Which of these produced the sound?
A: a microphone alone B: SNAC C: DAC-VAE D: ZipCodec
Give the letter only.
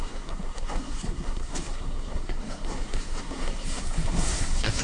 B